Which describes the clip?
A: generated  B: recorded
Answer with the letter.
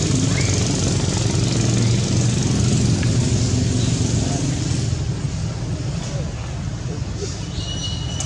B